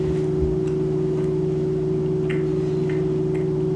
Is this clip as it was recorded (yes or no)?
yes